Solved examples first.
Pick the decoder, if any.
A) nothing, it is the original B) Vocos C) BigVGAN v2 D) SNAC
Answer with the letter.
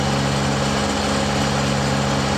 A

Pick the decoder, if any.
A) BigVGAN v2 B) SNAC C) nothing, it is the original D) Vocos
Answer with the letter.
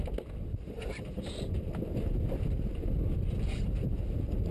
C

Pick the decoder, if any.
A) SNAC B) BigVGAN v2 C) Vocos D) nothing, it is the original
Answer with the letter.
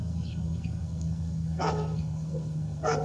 A